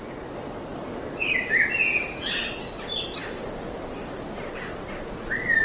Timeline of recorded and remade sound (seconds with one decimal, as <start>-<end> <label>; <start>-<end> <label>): 0.0-5.6 recorded